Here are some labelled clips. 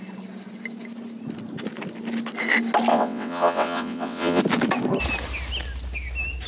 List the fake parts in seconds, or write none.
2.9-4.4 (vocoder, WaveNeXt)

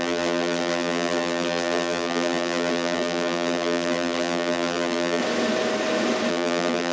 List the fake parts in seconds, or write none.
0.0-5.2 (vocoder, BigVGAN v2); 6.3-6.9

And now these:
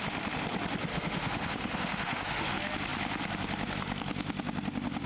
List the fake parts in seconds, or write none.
0.9-2.5 (autoencoder, DAC-VAE)